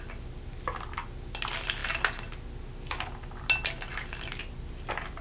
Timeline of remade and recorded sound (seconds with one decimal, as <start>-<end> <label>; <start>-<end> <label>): 0.0-5.2 recorded

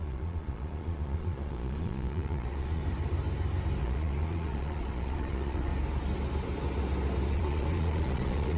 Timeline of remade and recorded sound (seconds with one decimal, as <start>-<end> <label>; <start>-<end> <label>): 0.0-2.8 remade; 2.8-3.8 recorded; 3.8-5.7 remade; 5.7-7.3 recorded; 7.3-8.6 remade